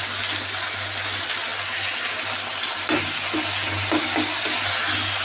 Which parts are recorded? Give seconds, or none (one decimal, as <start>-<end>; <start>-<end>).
0.0-5.2